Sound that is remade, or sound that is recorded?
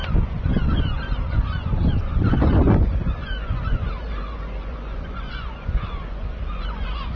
remade